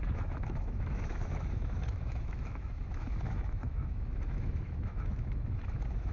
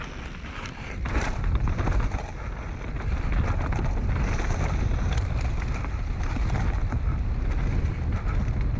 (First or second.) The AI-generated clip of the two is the first